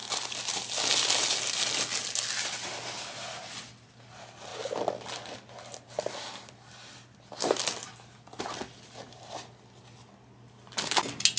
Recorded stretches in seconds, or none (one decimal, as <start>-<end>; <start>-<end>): 0.0-11.4